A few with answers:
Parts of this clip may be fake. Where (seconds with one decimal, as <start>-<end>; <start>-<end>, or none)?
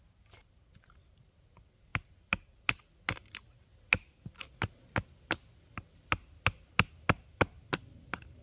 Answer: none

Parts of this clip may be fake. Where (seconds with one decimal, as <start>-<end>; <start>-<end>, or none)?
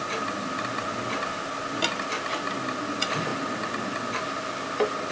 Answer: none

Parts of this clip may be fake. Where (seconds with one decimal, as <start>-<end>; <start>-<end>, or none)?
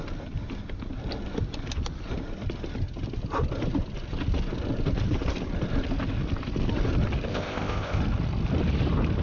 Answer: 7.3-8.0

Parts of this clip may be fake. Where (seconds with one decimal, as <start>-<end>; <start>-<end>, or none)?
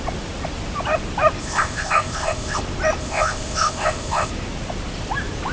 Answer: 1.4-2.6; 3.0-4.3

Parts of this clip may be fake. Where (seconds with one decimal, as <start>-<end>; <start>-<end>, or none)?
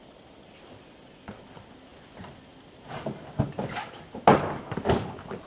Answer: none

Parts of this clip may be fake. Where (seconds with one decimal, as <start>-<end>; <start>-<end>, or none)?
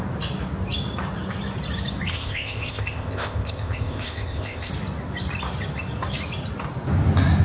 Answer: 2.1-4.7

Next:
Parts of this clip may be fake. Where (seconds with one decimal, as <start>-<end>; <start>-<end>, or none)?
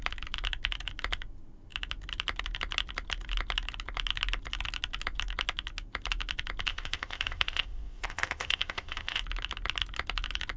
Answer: 6.7-9.2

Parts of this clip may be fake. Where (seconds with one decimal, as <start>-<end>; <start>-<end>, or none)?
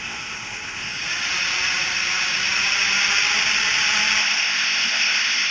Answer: 0.0-0.9; 4.2-5.5